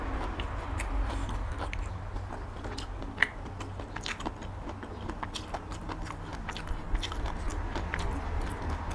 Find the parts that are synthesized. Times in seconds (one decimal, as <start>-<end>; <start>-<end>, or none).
none